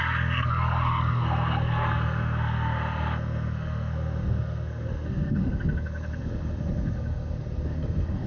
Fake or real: fake